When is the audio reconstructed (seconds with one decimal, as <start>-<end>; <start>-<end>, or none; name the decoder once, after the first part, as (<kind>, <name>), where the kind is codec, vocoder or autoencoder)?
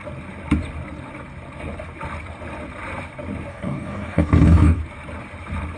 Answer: 3.5-4.8 (codec, DAC)